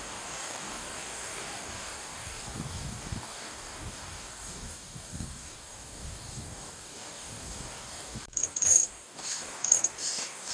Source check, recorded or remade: remade